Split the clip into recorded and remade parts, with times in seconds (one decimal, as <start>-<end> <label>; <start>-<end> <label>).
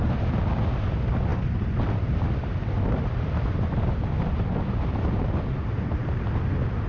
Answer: 0.0-1.3 recorded; 1.3-4.1 remade; 4.1-6.9 recorded